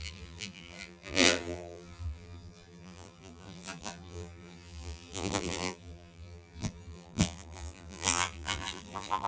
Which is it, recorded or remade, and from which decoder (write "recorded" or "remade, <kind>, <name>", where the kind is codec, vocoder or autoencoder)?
remade, vocoder, BigVGAN v2